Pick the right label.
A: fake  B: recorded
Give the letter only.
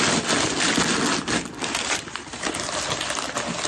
B